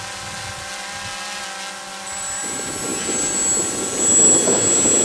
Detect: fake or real real